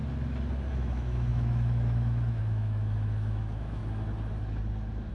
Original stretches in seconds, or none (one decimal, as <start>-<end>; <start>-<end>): 0.0-0.7; 3.8-5.1